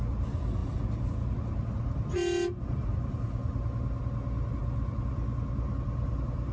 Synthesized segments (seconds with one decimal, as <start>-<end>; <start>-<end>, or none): none